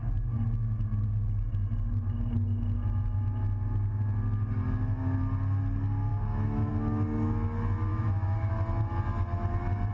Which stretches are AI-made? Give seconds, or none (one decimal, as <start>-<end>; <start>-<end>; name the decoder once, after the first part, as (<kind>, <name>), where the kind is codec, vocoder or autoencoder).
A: 6.1-6.7 (autoencoder, DAC-VAE); 7.9-8.5